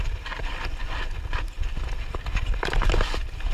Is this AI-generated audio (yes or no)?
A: no